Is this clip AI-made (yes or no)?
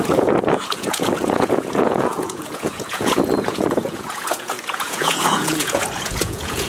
yes